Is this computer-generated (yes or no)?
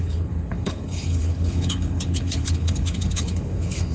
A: yes